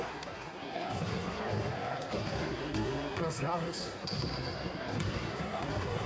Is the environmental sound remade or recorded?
remade